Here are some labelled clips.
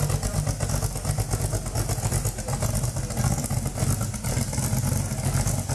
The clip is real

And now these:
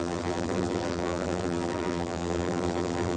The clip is fake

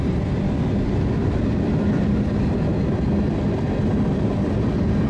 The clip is real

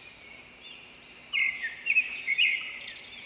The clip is fake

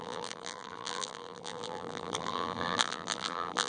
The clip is fake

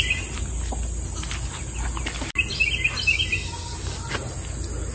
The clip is real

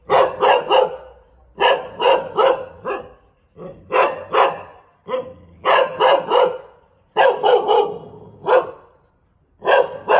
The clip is real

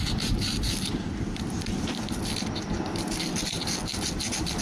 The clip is real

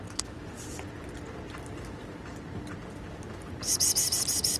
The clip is real